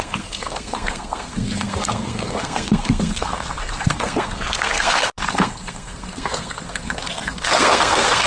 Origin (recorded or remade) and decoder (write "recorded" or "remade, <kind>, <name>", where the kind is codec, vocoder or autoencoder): remade, codec, SNAC